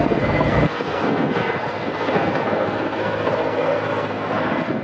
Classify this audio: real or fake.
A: fake